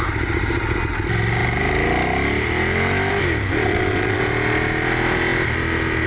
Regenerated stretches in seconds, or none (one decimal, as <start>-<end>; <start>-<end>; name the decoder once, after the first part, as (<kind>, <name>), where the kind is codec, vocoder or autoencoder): 3.7-4.2 (vocoder, WaveNeXt)